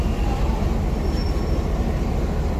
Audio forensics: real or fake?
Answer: real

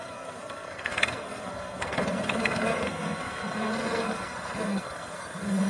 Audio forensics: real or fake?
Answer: fake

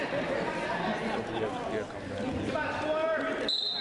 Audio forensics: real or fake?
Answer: real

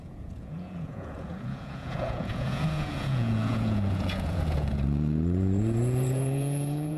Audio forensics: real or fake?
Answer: fake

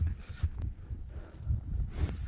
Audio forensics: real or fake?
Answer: real